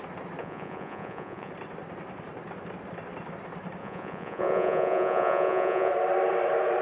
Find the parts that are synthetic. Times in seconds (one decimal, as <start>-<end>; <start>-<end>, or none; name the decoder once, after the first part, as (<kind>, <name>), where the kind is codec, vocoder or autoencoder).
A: 0.4-1.5 (vocoder, Vocos); 3.8-5.9